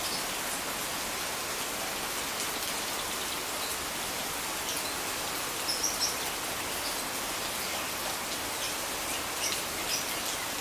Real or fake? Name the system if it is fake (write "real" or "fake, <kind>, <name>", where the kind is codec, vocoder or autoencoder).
real